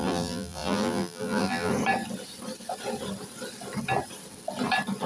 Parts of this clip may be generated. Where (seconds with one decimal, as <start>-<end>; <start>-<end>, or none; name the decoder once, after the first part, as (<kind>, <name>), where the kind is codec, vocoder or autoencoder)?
0.0-1.7 (vocoder, BigVGAN v2)